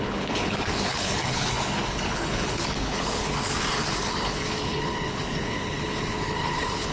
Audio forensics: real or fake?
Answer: fake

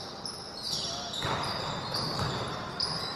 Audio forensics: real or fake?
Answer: fake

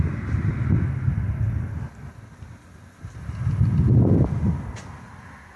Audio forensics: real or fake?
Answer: real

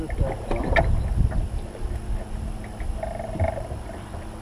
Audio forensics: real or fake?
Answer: real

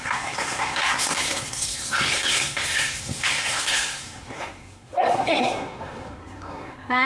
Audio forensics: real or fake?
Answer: fake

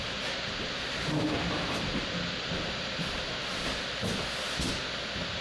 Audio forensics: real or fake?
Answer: real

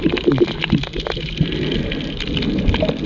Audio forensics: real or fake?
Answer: real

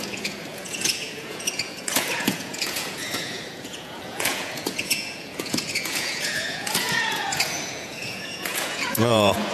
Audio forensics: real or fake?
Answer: fake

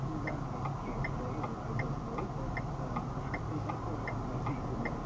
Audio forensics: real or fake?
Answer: real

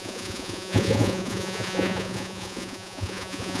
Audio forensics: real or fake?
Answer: fake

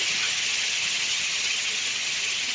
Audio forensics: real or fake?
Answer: fake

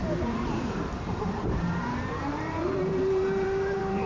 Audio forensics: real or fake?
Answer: fake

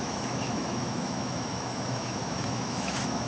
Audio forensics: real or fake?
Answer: fake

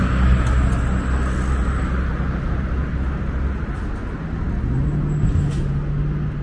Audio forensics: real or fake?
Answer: real